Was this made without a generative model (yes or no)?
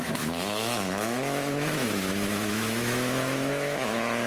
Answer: no